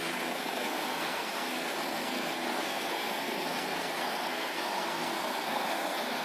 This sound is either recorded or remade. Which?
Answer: remade